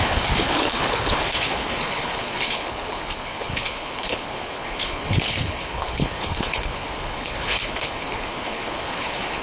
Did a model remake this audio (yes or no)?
yes